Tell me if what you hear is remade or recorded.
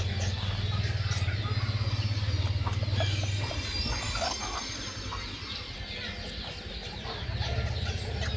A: recorded